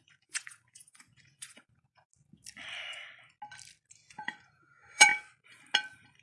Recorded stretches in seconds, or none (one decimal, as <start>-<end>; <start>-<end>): 2.1-4.1; 5.1-6.2

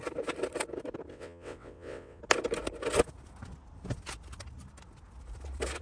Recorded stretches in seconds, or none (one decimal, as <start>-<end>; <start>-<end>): 0.0-1.1; 2.2-5.8

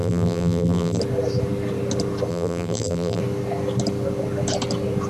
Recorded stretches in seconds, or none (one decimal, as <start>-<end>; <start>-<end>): 1.0-2.3; 3.2-5.1

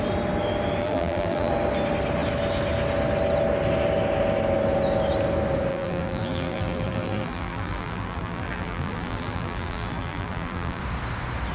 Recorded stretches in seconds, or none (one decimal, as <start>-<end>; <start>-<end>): 0.0-0.8; 1.5-5.7; 10.8-11.5